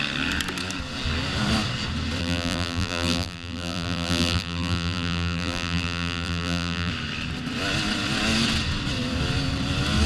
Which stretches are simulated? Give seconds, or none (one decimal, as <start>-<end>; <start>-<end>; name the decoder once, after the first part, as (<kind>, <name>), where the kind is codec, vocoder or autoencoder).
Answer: 2.2-6.9 (vocoder, BigVGAN v2)

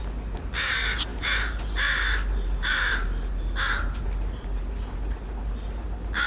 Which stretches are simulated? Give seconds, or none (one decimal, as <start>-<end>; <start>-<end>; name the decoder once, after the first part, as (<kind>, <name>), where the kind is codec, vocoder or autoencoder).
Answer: 1.1-4.6 (vocoder, BigVGAN v2)

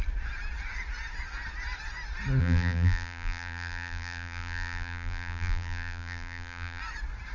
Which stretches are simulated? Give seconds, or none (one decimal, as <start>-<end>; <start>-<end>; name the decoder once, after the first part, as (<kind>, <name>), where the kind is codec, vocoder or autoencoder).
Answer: 2.4-6.8 (vocoder, BigVGAN v2)

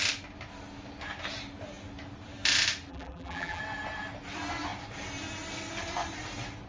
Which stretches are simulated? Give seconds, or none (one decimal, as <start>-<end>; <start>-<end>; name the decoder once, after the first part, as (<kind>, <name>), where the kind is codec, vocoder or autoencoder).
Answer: 2.9-3.6 (vocoder, BigVGAN v2)

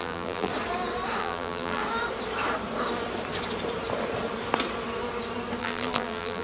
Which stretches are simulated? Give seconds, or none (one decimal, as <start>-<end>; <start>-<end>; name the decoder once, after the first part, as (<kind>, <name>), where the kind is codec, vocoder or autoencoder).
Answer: 0.0-0.5 (vocoder, BigVGAN v2); 1.2-1.8; 5.6-6.4